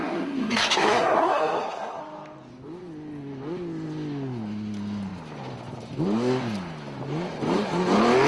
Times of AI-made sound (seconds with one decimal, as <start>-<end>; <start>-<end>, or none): 0.0-2.0